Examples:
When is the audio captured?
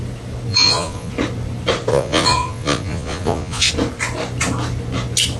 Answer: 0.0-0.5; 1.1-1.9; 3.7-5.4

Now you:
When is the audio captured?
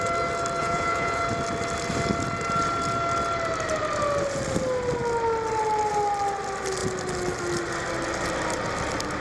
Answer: 0.0-0.6; 1.2-9.2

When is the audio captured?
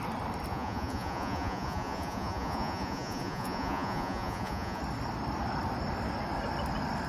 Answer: 0.0-0.5; 4.8-7.1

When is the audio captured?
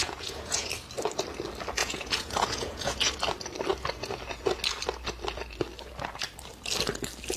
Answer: 0.7-1.8; 3.1-7.4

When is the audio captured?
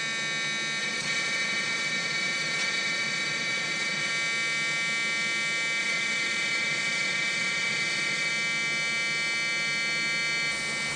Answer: 0.0-0.8; 4.1-5.8; 8.3-11.0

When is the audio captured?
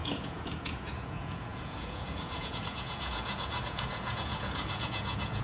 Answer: none